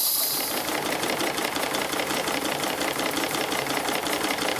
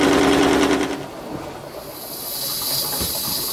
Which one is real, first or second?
second